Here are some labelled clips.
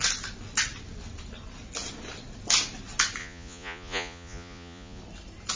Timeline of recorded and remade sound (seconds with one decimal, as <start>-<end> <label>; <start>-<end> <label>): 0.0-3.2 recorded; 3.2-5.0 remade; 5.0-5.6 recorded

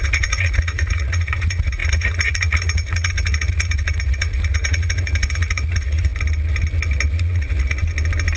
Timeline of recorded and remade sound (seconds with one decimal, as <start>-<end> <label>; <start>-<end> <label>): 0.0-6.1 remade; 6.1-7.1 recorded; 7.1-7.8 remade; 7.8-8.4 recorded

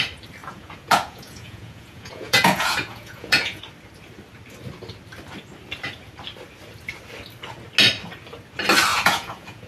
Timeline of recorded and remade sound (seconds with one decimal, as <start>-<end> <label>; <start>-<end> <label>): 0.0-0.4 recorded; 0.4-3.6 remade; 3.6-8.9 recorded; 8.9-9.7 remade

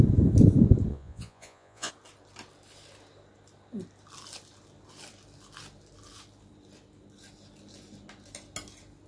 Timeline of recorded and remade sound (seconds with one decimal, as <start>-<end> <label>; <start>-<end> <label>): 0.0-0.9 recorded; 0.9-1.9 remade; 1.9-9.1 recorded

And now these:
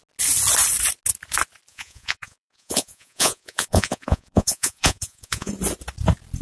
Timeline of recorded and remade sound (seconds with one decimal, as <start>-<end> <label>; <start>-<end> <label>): 0.0-1.7 recorded; 1.7-5.5 remade; 5.5-6.4 recorded

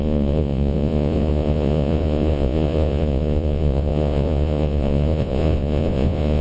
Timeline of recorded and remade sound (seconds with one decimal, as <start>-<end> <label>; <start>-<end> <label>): 0.0-6.4 remade

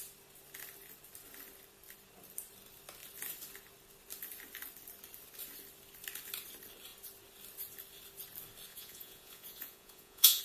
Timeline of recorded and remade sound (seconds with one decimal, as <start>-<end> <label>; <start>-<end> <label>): 0.0-8.7 recorded; 8.7-10.4 remade

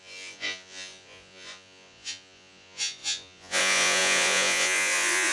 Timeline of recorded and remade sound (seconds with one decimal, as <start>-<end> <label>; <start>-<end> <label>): 0.0-5.3 remade